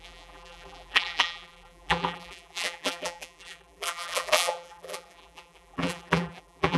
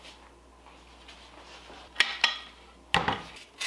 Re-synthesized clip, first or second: first